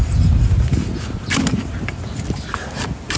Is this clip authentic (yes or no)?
yes